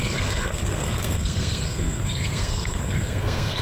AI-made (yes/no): yes